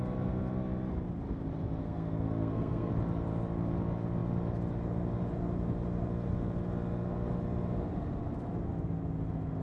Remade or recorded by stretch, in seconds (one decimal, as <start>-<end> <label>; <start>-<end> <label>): 0.0-1.8 recorded; 1.8-2.9 remade; 2.9-9.6 recorded